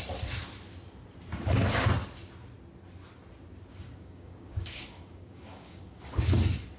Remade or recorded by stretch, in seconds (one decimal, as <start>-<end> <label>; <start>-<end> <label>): 0.0-3.7 recorded; 3.7-6.0 remade; 6.0-6.8 recorded